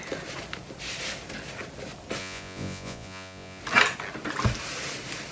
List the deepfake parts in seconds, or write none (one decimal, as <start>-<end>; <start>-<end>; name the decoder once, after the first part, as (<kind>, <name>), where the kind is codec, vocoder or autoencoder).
2.2-3.6 (vocoder, Vocos)